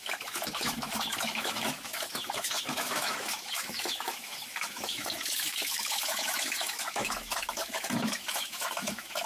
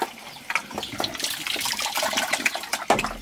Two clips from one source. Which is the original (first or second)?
second